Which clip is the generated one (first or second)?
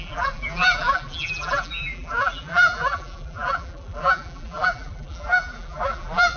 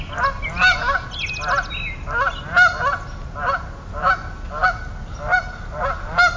first